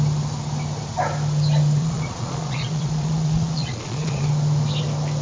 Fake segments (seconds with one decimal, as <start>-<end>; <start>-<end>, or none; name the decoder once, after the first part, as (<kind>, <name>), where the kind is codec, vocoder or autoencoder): 1.8-4.2 (vocoder, Vocos)